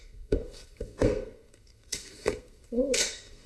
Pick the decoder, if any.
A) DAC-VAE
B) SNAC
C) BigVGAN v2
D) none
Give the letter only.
B